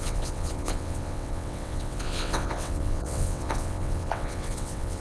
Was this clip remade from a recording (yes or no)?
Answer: yes